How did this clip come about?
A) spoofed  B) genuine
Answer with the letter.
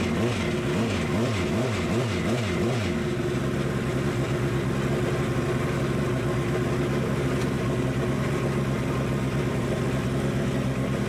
B